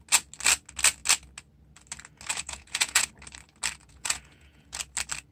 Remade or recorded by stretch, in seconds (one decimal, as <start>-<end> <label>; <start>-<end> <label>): 0.0-2.3 recorded; 2.3-3.1 remade; 3.1-3.8 recorded; 3.8-4.8 remade; 4.8-5.3 recorded